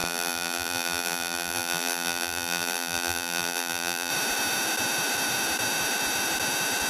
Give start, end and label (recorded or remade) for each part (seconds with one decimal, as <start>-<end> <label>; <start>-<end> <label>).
0.0-4.1 remade; 4.1-6.9 recorded